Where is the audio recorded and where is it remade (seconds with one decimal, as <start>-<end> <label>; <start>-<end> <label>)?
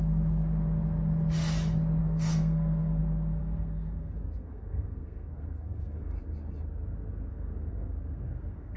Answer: 0.0-2.0 recorded; 2.0-3.0 remade; 3.0-3.4 recorded; 3.4-6.2 remade; 6.2-7.3 recorded; 7.3-8.8 remade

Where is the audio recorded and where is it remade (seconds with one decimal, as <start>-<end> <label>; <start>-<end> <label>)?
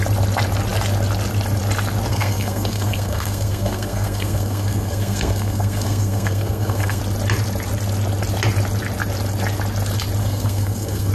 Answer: 0.0-2.1 recorded; 2.1-7.0 remade; 7.0-10.2 recorded; 10.2-11.1 remade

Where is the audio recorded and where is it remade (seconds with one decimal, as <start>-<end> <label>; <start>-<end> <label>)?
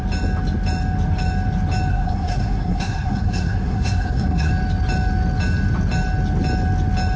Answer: 0.0-1.9 recorded; 1.9-4.5 remade; 4.5-7.2 recorded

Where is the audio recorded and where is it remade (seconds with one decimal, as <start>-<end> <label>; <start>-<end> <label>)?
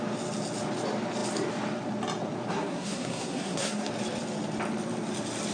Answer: 0.0-2.5 recorded; 2.5-3.9 remade; 3.9-5.5 recorded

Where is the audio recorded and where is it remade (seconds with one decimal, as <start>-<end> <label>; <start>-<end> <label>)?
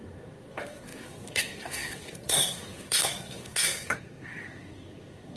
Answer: 0.0-5.4 remade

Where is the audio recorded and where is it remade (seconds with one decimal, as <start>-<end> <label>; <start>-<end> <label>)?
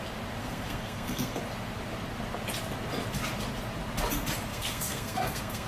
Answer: 0.0-0.4 recorded; 0.4-1.4 remade; 1.4-4.5 recorded; 4.5-5.7 remade